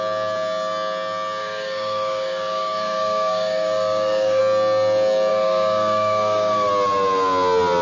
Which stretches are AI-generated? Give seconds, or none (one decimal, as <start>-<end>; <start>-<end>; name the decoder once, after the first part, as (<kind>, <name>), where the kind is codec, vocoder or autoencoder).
1.4-4.4 (codec, DAC); 5.3-6.7